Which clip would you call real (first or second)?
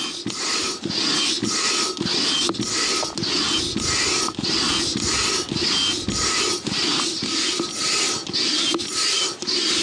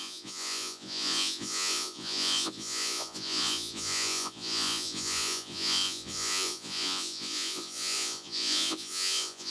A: first